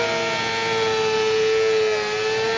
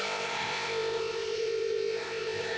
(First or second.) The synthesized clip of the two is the second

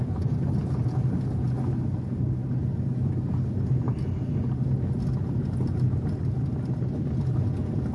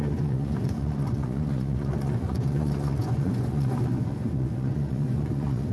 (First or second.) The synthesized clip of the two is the second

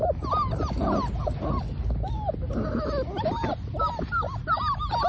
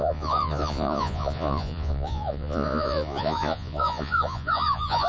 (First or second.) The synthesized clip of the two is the second